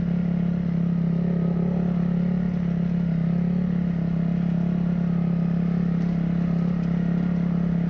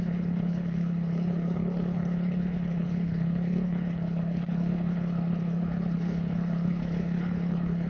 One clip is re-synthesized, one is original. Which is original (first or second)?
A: first